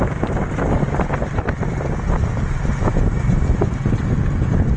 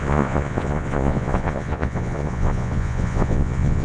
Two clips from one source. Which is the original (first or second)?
first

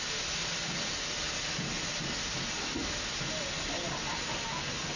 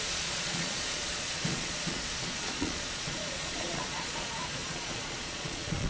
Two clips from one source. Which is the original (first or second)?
first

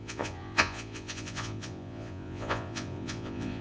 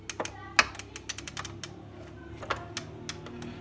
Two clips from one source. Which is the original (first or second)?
second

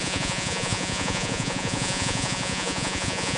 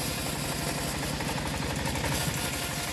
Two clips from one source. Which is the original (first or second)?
second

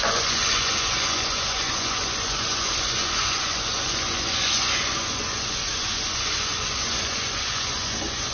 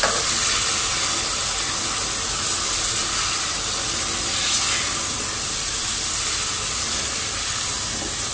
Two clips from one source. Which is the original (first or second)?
second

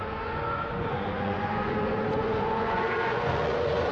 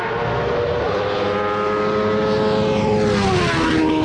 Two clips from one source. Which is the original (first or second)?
second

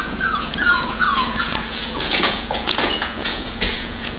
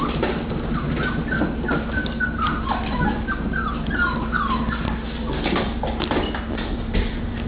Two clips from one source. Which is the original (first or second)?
second